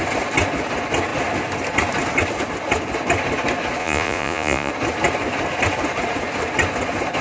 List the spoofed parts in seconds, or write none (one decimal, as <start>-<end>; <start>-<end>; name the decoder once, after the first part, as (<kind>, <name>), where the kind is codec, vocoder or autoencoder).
3.8-4.7 (vocoder, Vocos)